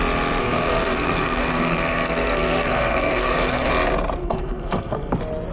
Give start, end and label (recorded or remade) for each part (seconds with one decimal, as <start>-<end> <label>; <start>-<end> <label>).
0.0-0.4 recorded; 0.4-3.7 remade; 3.7-4.2 recorded; 4.2-5.1 remade; 5.1-5.5 recorded